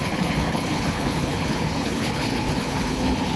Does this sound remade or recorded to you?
remade